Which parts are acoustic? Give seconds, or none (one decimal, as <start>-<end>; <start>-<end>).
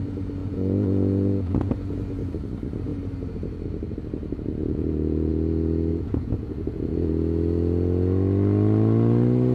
0.0-0.4; 1.7-4.6; 5.3-5.9; 7.1-9.5